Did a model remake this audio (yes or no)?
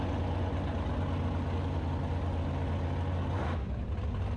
no